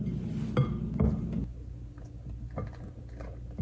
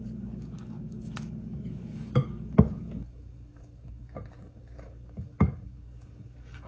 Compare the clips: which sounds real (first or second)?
first